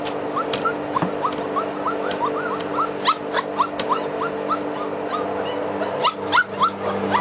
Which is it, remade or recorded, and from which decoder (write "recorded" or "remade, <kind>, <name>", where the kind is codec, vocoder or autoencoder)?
recorded